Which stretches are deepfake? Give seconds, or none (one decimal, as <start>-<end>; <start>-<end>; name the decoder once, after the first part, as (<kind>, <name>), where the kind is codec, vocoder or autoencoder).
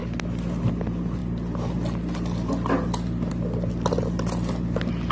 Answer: none